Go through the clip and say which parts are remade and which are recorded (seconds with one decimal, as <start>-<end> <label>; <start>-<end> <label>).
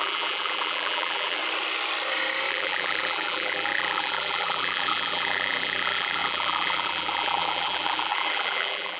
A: 0.0-1.4 remade; 1.4-2.5 recorded; 2.5-9.0 remade